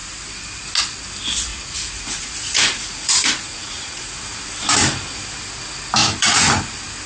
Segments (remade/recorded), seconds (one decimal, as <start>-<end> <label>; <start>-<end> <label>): 0.0-1.5 recorded; 1.5-4.4 remade; 4.4-6.0 recorded; 6.0-6.6 remade; 6.6-7.1 recorded